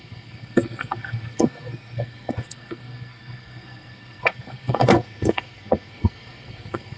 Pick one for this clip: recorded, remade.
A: remade